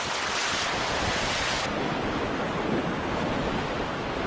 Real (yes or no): yes